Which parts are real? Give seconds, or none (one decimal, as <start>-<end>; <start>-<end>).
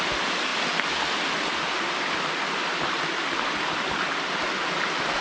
0.0-0.5; 3.0-5.2